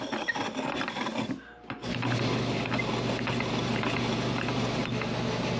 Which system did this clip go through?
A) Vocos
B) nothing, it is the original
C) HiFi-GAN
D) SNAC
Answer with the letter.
B